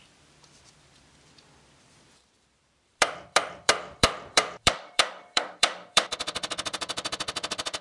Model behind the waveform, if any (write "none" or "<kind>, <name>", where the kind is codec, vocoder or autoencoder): vocoder, BigVGAN v2